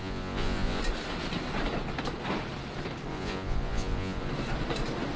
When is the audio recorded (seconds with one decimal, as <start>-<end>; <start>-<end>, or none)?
0.8-3.1; 4.3-5.2